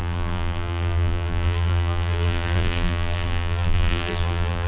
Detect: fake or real fake